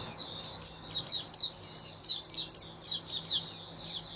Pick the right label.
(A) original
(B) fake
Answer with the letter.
A